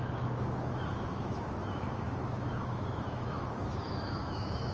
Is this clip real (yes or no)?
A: no